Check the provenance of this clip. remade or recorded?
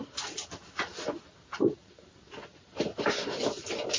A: remade